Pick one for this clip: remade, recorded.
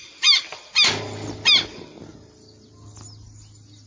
recorded